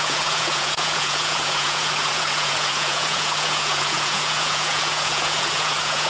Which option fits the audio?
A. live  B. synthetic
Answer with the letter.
B